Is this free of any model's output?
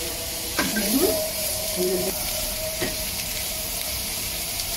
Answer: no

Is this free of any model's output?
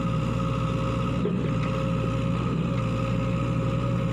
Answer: yes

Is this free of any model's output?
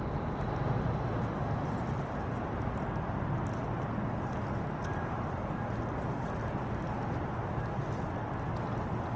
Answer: yes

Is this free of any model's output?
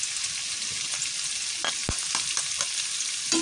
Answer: yes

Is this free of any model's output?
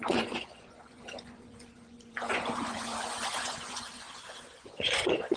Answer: no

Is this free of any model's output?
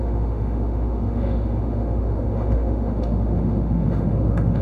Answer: no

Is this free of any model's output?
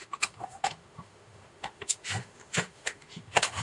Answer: no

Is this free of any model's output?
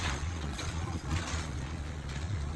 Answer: no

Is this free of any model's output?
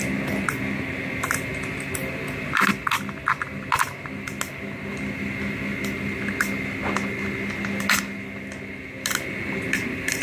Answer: yes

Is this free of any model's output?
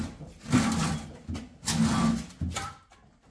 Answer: yes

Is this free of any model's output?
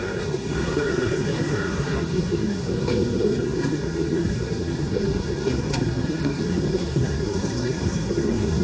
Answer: no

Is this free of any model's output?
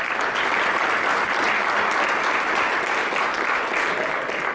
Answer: yes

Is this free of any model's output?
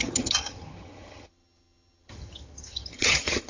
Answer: no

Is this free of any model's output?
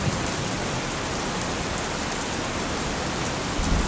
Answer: yes